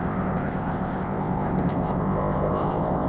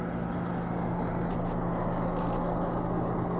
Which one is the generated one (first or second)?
first